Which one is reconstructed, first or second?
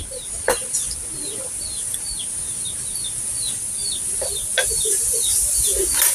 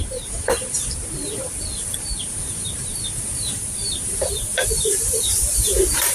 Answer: second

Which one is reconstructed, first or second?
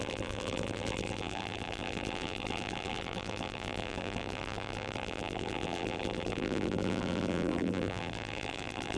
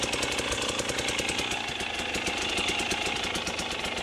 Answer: first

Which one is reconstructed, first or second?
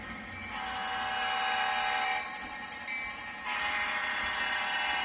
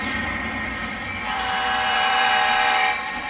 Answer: second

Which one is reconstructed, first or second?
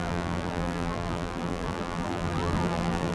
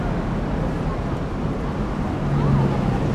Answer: first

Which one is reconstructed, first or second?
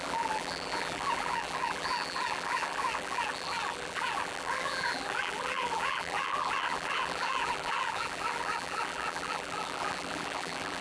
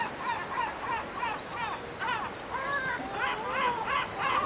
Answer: first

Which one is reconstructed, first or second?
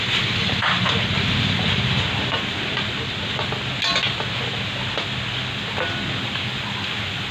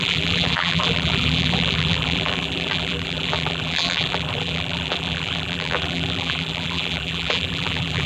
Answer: second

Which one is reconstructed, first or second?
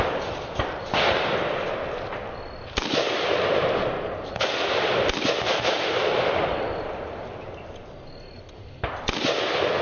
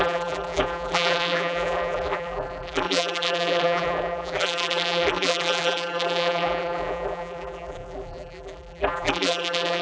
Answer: second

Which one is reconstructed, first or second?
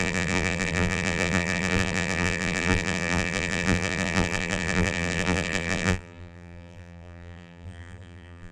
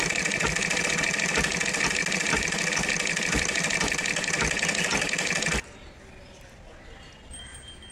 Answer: first